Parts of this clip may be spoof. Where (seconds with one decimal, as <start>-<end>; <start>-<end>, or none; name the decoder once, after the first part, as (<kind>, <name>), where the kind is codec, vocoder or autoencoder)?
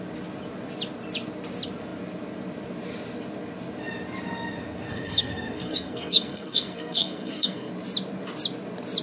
4.9-7.7 (codec, SNAC)